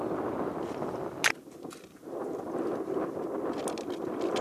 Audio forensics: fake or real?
real